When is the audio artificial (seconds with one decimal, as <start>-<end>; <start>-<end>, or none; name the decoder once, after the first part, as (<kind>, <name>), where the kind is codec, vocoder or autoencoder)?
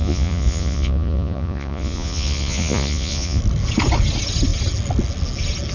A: 0.0-3.4 (vocoder, Vocos)